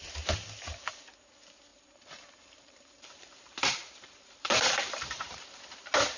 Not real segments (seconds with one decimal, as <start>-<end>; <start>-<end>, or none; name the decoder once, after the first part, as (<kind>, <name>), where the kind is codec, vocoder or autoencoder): 1.7-5.4 (vocoder, BigVGAN v2)

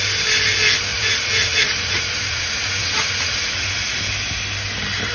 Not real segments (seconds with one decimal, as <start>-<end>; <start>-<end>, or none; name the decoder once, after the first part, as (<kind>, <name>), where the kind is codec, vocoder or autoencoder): 0.9-4.0 (vocoder, Vocos)